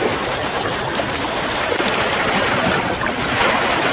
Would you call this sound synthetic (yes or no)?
no